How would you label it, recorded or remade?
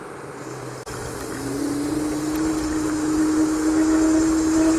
recorded